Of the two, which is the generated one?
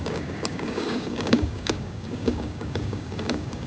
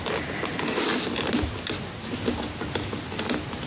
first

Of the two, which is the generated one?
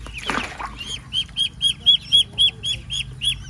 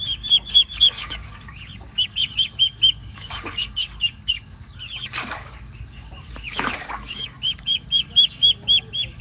second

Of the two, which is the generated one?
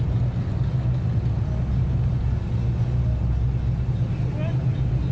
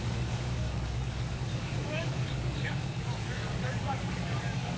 second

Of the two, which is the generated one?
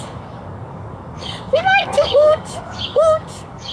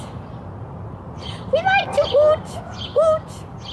first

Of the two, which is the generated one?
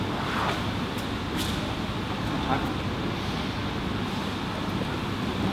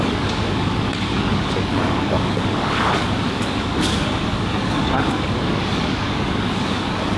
second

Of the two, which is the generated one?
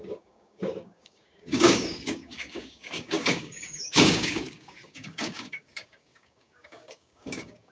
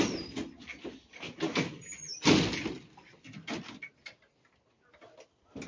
first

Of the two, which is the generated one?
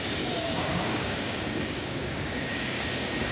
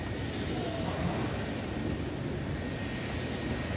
first